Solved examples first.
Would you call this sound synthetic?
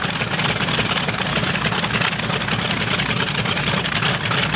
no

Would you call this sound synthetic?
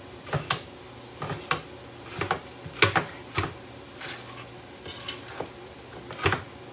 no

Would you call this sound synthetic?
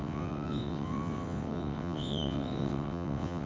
yes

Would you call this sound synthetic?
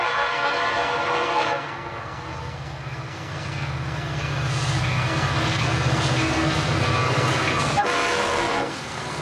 yes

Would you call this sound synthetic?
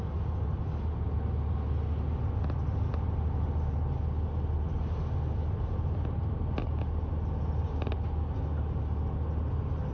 no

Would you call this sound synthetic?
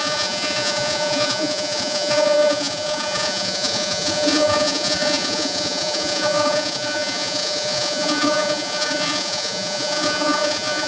yes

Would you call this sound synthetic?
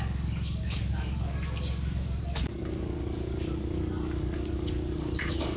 yes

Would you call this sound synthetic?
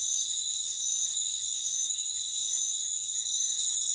yes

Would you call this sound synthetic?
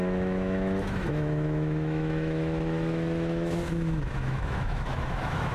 yes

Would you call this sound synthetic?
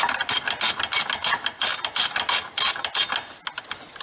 no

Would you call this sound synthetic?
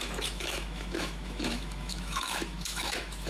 yes